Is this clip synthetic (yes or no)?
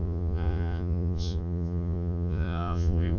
yes